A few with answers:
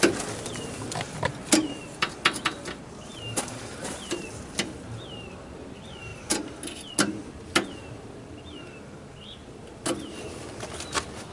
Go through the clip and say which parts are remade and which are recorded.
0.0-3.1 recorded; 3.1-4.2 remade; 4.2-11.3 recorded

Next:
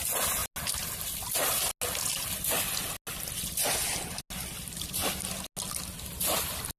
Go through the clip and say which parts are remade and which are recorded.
0.0-6.8 recorded

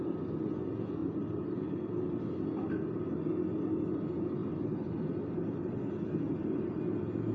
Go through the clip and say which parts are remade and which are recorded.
0.0-1.0 recorded; 1.0-2.2 remade; 2.2-4.4 recorded; 4.4-6.8 remade; 6.8-7.3 recorded

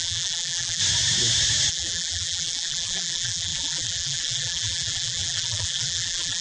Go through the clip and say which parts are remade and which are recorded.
0.0-0.8 remade; 0.8-1.7 recorded; 1.7-6.4 remade

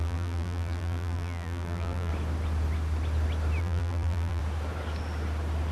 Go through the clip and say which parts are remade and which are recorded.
0.0-2.1 remade; 2.1-3.6 recorded; 3.6-4.4 remade; 4.4-5.7 recorded

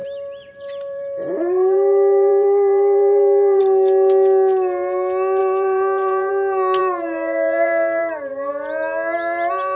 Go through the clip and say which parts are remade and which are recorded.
0.0-3.6 remade; 3.6-5.4 recorded; 5.4-6.3 remade; 6.3-6.8 recorded; 6.8-8.5 remade; 8.5-9.8 recorded

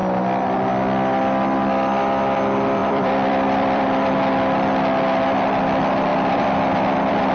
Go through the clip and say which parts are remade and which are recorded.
0.0-2.8 recorded; 2.8-4.2 remade; 4.2-6.1 recorded; 6.1-7.3 remade

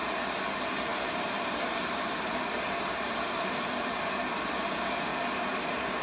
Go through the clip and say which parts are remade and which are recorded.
0.0-0.9 recorded; 0.9-4.5 remade; 4.5-5.1 recorded; 5.1-6.0 remade